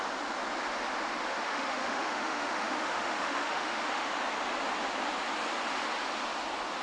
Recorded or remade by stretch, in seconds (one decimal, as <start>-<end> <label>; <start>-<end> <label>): 0.0-1.3 recorded; 1.3-4.1 remade; 4.1-6.8 recorded